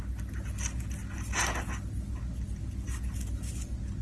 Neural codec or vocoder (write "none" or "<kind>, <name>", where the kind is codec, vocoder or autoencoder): none